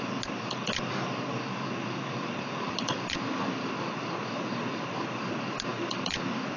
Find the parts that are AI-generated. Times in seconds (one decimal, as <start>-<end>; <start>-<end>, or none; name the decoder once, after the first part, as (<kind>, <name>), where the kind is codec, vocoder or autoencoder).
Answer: none